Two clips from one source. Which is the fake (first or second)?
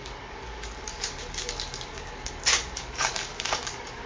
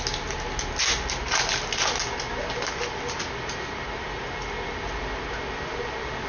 first